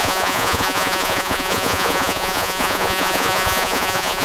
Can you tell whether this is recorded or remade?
remade